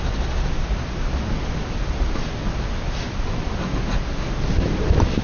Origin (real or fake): real